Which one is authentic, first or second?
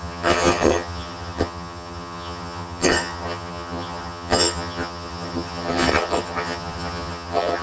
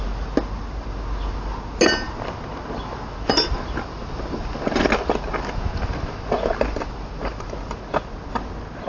second